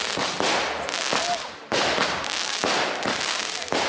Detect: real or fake real